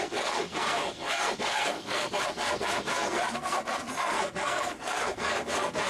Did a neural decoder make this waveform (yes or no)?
yes